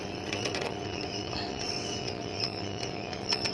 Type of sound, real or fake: fake